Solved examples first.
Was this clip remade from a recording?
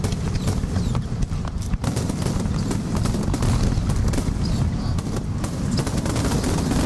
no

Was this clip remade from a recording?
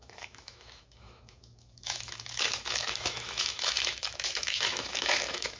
yes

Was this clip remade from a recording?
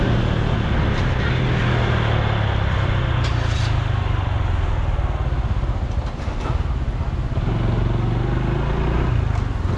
no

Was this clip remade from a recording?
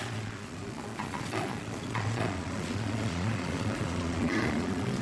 yes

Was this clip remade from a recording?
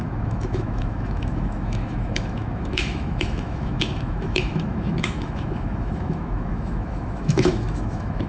yes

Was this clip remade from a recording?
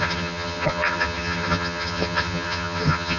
yes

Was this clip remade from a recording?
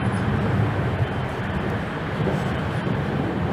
yes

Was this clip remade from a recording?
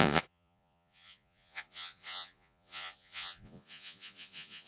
yes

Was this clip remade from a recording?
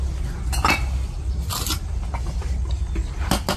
no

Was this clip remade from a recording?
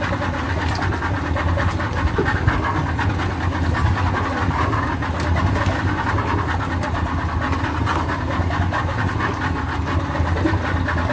no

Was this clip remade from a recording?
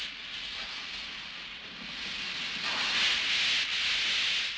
no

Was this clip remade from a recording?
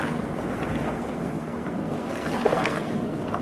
yes